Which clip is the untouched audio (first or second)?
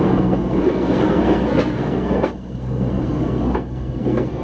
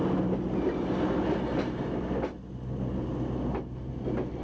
second